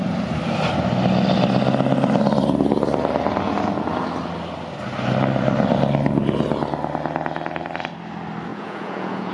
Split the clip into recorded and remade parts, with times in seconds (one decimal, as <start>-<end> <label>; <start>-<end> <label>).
0.0-8.5 recorded; 8.5-9.3 remade